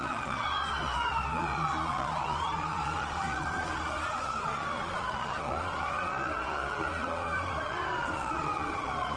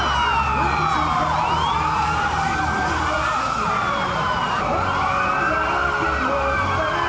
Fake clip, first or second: first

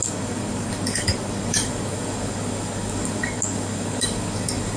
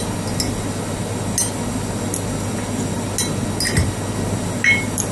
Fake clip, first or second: first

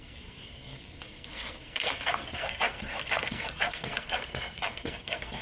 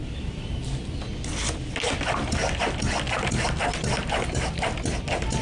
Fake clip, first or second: first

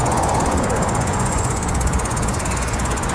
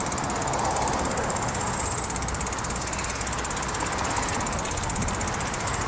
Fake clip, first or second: first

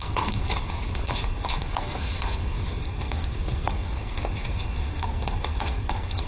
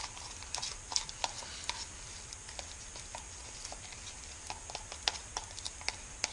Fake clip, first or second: first